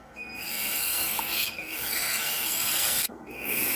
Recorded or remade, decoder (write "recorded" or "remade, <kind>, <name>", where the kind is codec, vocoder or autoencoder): remade, codec, SNAC